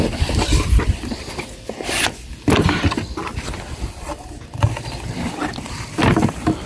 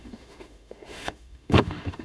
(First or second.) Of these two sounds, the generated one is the second